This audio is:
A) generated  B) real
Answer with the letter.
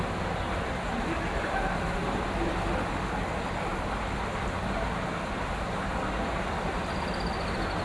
B